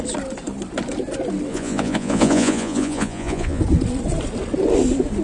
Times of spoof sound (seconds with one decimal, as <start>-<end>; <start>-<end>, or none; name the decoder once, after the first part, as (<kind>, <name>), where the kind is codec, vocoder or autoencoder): 1.5-3.6 (vocoder, Vocos)